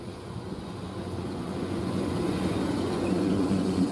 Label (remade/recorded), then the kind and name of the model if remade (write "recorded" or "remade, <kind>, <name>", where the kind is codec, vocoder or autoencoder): remade, vocoder, Vocos